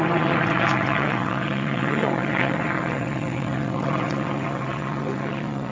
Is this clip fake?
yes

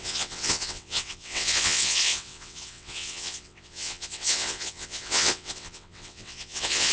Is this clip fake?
yes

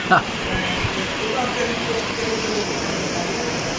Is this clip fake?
no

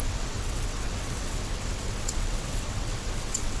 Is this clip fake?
yes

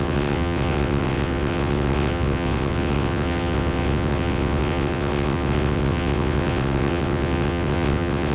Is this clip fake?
yes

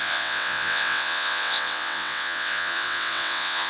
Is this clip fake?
yes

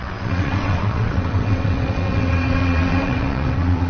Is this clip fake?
yes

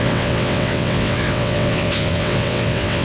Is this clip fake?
yes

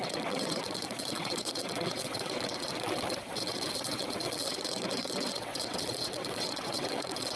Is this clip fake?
yes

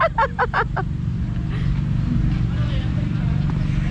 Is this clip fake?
no